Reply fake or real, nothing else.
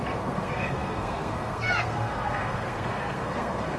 fake